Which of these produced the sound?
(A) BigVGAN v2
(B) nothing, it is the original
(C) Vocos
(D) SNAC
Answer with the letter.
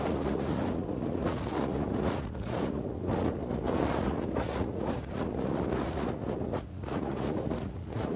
C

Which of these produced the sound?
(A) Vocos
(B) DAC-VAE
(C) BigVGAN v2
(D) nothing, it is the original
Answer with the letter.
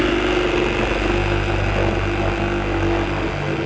D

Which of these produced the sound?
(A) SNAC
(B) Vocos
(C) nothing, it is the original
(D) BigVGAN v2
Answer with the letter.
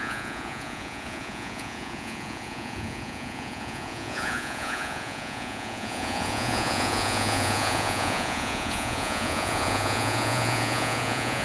B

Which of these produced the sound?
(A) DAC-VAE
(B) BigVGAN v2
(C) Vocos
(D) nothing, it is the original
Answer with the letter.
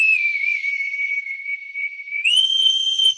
C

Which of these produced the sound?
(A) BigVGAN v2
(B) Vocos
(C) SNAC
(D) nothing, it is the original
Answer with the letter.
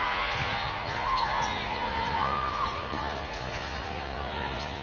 B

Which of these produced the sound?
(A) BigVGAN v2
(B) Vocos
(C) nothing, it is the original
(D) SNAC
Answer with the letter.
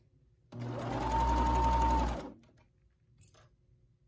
C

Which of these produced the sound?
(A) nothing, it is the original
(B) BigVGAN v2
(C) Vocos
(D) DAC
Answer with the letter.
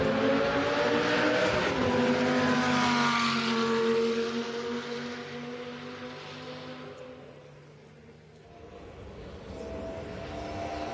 A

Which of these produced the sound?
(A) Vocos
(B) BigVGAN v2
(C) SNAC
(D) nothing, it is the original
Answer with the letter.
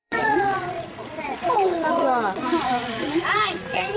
A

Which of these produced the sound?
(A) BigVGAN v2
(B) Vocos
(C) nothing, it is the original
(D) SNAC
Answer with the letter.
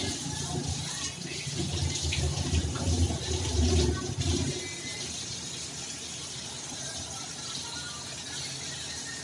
C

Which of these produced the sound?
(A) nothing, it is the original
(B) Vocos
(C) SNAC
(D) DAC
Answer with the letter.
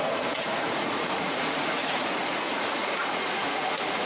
B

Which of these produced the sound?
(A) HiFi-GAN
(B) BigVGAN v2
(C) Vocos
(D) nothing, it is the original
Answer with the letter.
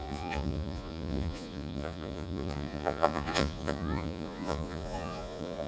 C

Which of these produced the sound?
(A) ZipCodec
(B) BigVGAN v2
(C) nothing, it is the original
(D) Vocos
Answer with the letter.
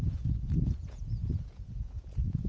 D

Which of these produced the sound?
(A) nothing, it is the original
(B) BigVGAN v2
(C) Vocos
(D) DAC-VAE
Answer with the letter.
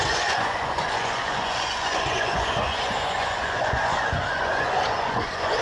C